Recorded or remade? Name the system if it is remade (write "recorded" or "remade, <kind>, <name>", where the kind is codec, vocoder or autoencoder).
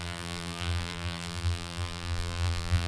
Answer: remade, vocoder, BigVGAN v2